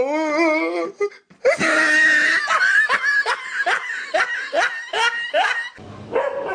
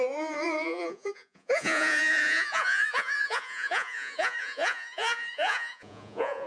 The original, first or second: first